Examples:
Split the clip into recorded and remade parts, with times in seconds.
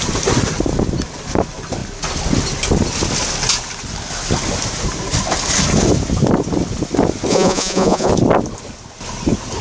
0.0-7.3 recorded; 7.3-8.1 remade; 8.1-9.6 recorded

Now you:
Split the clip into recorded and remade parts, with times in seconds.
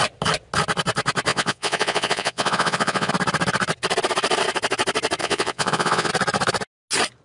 0.0-1.3 recorded; 1.3-3.1 remade; 3.1-5.2 recorded; 5.2-6.1 remade; 6.1-7.2 recorded